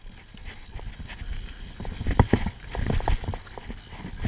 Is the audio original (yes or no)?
yes